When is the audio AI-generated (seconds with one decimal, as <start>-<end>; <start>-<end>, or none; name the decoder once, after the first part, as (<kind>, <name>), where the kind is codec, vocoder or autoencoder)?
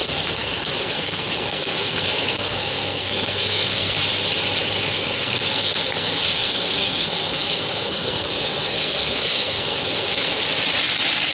0.0-4.0 (codec, SNAC); 5.0-10.4